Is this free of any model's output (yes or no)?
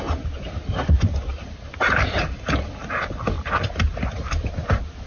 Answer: yes